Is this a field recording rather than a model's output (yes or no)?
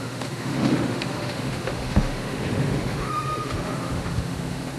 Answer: no